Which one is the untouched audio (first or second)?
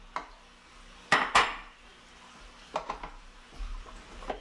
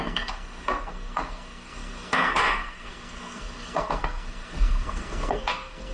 first